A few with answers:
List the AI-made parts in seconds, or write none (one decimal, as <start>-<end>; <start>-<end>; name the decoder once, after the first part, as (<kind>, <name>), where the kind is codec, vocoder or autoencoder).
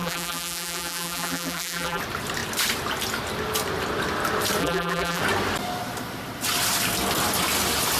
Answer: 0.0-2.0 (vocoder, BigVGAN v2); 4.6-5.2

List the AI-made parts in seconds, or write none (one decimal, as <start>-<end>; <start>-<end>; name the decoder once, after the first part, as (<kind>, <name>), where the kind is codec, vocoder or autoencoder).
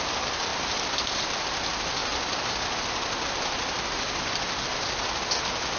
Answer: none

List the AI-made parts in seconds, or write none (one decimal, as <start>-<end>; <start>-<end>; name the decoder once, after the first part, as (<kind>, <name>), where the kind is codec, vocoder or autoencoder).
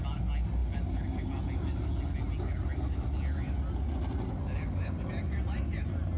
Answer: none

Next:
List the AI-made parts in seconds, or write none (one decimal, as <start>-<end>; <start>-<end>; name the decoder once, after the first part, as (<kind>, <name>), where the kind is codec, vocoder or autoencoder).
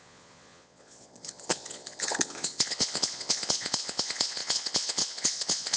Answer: 0.0-5.8 (vocoder, Vocos)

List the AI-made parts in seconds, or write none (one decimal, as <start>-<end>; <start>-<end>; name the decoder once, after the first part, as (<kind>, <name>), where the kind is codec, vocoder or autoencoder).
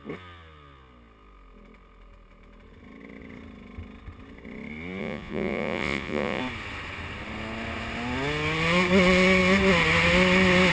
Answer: 5.0-6.4 (vocoder, Vocos)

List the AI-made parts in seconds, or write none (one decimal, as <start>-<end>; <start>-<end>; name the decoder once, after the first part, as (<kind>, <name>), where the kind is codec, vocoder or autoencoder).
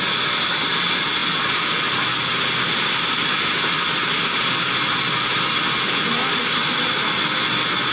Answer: none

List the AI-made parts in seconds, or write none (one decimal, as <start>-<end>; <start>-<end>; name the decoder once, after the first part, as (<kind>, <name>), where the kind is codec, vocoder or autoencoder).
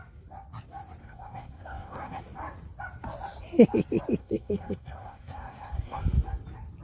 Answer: 1.0-2.2 (codec, SNAC); 4.2-6.0